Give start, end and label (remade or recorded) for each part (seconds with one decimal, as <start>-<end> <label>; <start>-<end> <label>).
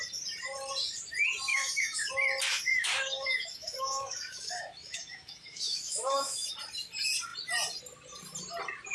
0.0-1.5 recorded; 1.5-2.1 remade; 2.1-2.7 recorded; 2.7-6.5 remade; 6.5-8.9 recorded